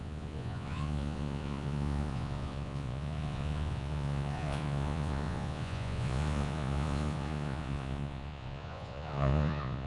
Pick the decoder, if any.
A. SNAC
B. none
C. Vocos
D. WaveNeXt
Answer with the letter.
C